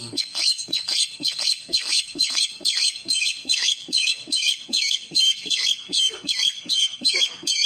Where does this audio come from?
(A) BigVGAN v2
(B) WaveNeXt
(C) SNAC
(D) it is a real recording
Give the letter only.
C